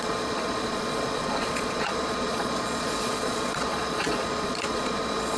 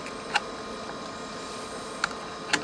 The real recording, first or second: second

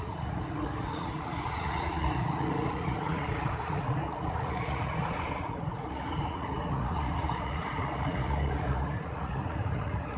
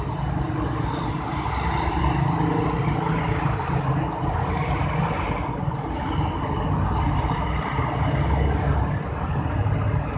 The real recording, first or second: second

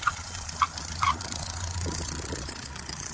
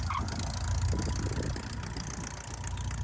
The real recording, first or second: second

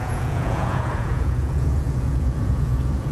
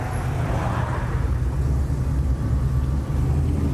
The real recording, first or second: second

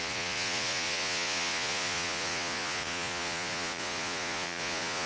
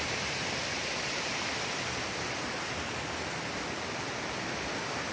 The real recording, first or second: second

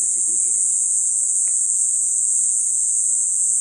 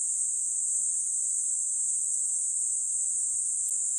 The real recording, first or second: second